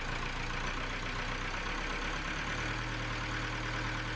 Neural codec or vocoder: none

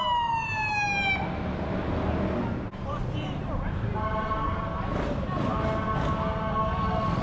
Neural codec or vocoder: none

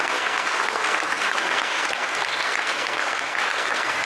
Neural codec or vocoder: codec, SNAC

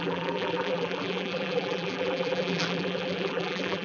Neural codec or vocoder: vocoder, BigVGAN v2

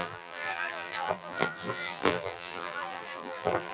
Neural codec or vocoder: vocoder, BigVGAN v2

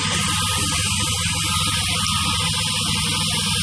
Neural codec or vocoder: none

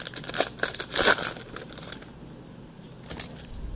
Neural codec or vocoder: none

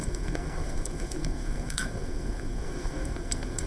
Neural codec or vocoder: codec, SNAC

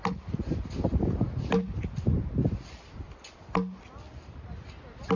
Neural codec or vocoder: none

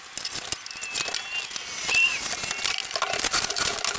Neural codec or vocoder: none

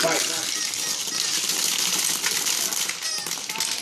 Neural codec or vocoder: none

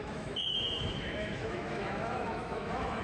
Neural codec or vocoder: autoencoder, DAC-VAE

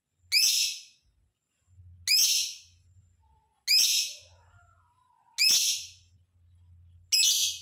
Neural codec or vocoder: none